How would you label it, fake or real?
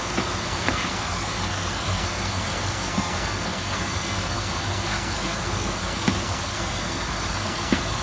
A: fake